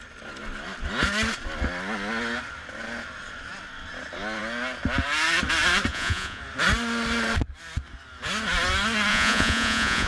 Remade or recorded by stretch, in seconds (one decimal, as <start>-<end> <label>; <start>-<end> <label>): 0.0-5.9 recorded; 5.9-6.4 remade; 6.4-9.1 recorded; 9.1-10.1 remade